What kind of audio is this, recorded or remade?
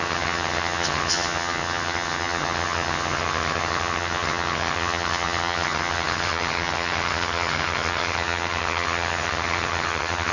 remade